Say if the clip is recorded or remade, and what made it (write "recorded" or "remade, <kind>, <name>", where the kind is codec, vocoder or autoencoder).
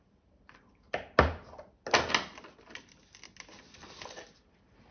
recorded